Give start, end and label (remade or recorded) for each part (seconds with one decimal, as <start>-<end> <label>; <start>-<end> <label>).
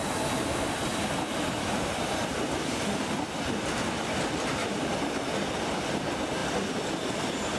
0.0-7.6 recorded